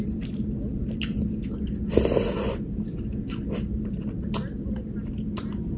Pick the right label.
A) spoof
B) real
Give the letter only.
B